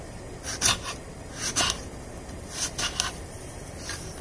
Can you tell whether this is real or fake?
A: real